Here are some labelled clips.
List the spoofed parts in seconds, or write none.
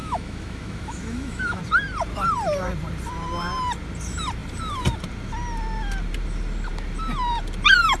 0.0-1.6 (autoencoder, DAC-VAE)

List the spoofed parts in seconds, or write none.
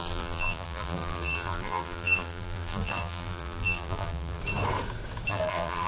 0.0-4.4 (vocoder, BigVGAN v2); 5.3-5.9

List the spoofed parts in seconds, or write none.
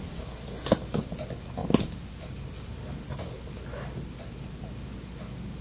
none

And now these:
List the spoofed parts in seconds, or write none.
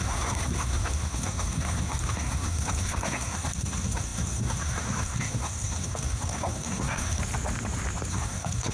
0.0-7.2 (codec, SNAC); 8.1-8.7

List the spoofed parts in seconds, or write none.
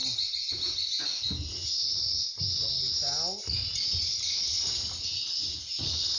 none